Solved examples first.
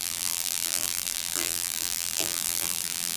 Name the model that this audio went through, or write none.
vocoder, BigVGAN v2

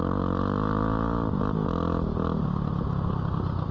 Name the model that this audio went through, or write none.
none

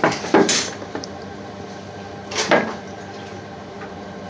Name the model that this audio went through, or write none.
vocoder, BigVGAN v2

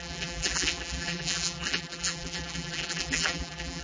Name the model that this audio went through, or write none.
vocoder, BigVGAN v2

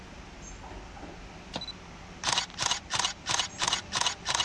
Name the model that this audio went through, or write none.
none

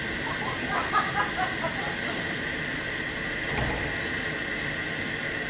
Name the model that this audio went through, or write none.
none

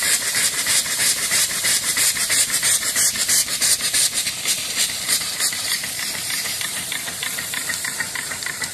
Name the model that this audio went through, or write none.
vocoder, BigVGAN v2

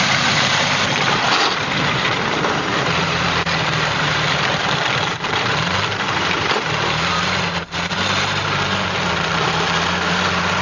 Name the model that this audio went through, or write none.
vocoder, BigVGAN v2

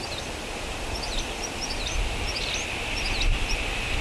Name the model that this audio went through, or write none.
vocoder, BigVGAN v2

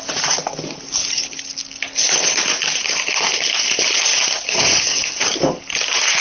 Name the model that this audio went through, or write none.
none